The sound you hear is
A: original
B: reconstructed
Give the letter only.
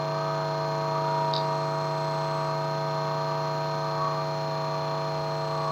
A